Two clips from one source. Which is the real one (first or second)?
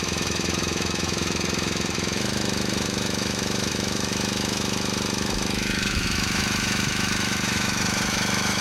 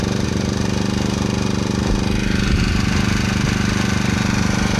second